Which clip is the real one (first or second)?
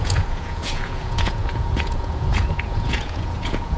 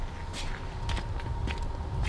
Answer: second